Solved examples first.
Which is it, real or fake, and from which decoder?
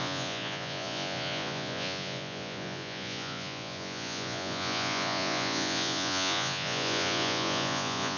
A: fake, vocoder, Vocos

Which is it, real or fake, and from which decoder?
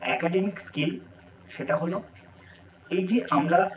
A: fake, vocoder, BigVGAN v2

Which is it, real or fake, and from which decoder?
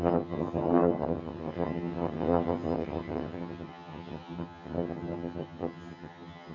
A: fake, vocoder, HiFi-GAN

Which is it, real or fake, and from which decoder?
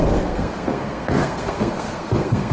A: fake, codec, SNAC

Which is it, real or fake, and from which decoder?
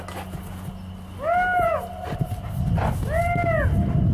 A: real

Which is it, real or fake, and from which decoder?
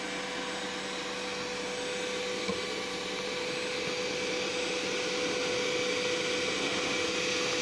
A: real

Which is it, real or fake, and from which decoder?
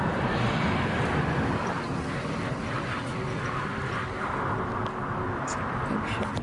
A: real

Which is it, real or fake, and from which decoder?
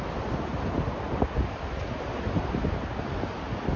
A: real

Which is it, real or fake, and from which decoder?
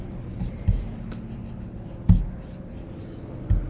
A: real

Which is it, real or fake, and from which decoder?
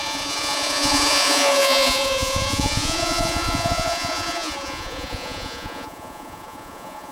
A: fake, vocoder, Vocos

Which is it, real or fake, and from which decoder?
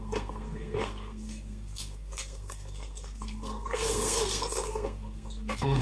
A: fake, codec, SNAC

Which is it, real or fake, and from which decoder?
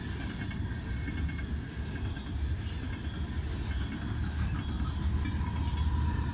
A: real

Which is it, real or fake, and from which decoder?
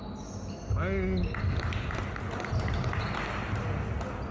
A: real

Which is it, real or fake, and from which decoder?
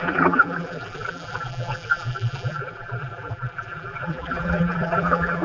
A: fake, vocoder, BigVGAN v2